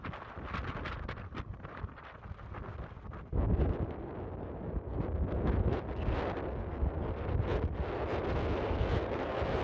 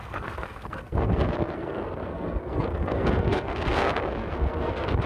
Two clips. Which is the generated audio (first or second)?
second